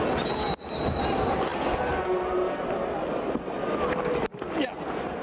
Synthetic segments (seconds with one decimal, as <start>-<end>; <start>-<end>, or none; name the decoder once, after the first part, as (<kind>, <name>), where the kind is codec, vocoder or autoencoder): none